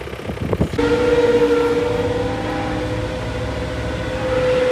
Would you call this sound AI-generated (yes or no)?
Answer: no